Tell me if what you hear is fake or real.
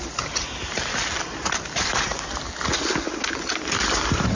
real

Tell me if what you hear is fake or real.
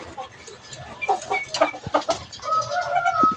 real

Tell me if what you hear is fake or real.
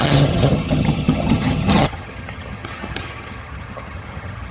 fake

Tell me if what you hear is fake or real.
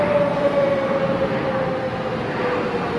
real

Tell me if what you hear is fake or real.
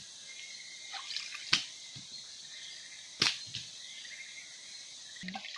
real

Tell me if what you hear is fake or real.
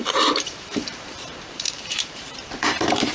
fake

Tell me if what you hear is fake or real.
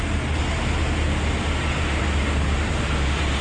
real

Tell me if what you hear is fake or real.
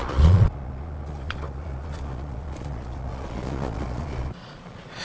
fake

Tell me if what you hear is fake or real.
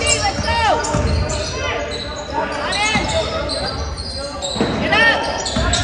real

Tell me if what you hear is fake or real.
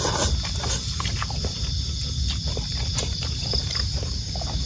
real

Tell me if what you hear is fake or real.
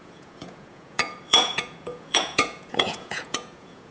fake